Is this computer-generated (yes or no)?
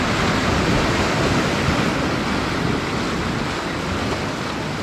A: no